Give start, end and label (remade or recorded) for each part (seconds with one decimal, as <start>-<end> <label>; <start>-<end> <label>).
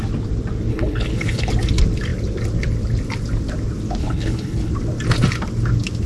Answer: 0.0-0.7 recorded; 0.7-1.5 remade; 1.5-4.0 recorded; 4.0-4.7 remade; 4.7-6.1 recorded